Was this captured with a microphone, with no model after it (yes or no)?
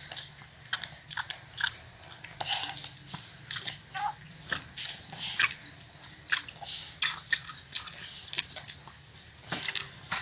yes